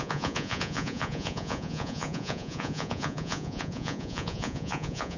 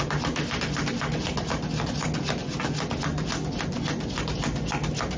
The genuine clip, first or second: second